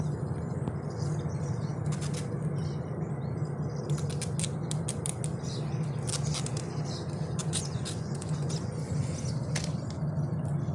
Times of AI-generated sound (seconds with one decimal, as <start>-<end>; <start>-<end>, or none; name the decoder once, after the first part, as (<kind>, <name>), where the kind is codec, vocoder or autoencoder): 7.4-8.9 (vocoder, Vocos)